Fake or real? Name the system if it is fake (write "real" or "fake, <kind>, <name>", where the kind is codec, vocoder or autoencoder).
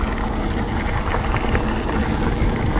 real